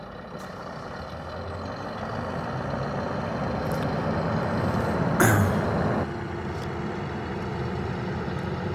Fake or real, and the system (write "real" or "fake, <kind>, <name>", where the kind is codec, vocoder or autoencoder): real